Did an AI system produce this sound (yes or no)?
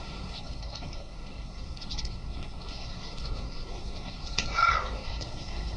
yes